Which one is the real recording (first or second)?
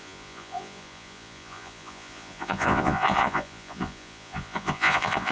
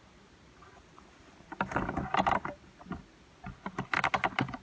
second